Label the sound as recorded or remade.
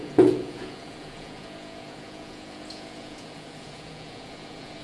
remade